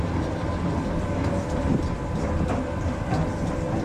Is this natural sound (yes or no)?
yes